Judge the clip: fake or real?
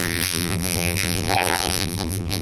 fake